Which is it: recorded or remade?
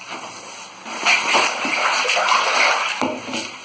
recorded